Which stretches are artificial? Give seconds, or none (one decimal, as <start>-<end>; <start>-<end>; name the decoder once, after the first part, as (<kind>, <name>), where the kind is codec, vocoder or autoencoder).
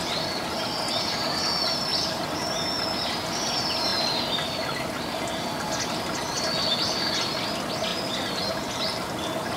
7.9-8.5 (vocoder, BigVGAN v2)